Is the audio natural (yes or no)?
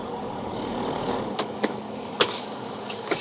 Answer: no